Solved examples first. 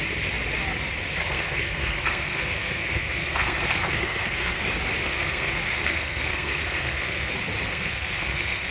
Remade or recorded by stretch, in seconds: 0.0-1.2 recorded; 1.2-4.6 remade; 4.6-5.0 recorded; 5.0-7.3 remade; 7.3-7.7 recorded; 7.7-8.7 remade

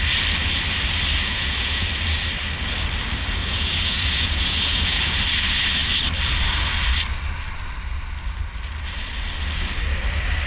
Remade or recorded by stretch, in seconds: 0.0-1.2 recorded; 1.2-1.9 remade; 1.9-3.4 recorded; 3.4-5.2 remade; 5.2-10.5 recorded

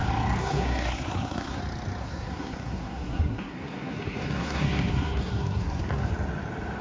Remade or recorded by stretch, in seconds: 0.0-0.4 recorded; 0.4-1.6 remade; 1.6-2.0 recorded; 2.0-6.1 remade; 6.1-6.8 recorded